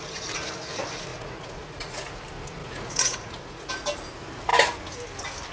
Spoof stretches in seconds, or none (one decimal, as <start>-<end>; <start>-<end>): 1.1-2.1; 2.6-3.7